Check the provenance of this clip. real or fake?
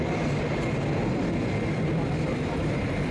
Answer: fake